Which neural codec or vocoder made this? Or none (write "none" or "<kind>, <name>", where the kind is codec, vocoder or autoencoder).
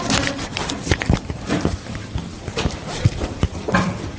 vocoder, BigVGAN v2